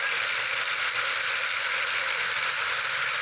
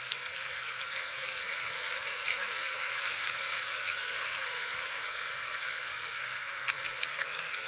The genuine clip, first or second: first